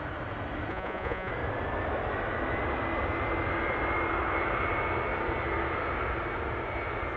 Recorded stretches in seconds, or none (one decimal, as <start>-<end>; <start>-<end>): 0.0-0.7; 1.3-7.2